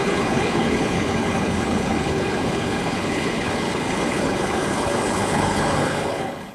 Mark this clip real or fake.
fake